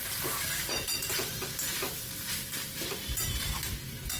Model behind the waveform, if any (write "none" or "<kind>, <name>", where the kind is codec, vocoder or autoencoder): vocoder, BigVGAN v2